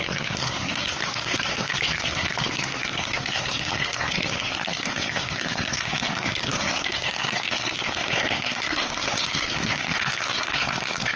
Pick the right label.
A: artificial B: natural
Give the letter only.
A